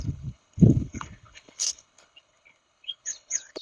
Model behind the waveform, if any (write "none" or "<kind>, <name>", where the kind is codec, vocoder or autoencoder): codec, HILCodec